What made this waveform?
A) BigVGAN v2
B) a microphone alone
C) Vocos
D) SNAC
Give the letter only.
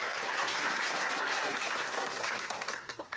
D